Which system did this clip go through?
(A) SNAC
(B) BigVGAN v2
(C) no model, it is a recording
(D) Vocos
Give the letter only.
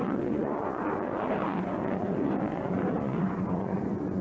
D